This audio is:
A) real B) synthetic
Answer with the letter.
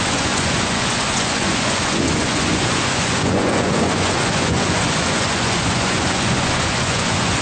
B